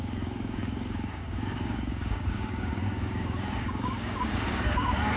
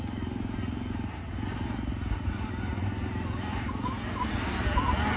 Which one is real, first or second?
second